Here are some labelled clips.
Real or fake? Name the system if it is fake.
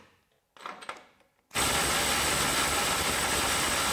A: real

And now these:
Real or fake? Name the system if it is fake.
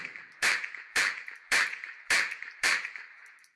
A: fake, vocoder, BigVGAN v2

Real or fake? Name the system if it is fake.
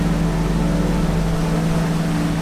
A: real